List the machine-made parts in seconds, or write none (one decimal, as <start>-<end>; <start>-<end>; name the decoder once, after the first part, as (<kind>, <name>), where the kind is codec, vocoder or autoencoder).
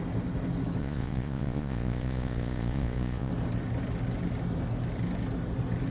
0.8-3.3 (vocoder, Vocos)